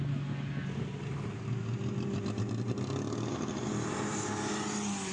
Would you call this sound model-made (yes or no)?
no